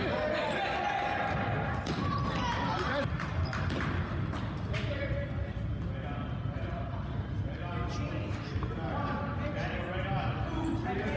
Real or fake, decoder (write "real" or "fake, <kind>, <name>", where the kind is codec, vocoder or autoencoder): real